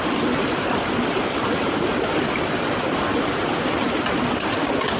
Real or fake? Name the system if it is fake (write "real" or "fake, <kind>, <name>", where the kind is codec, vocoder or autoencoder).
real